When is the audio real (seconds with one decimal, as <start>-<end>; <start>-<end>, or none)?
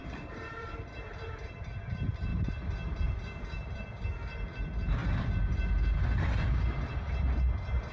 2.3-3.0; 5.0-7.9